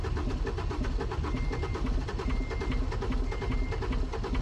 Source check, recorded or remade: recorded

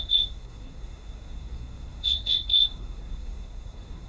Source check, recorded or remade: remade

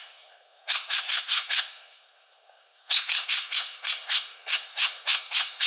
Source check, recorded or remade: remade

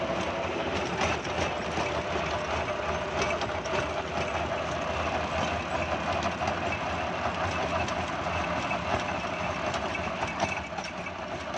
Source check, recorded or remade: recorded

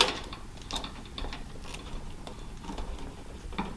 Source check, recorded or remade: recorded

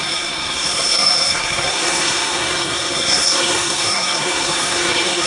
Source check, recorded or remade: remade